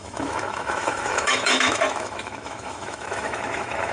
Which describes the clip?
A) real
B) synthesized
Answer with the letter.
B